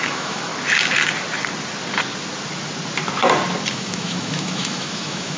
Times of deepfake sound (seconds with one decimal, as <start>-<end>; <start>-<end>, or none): 0.0-0.5; 3.7-5.4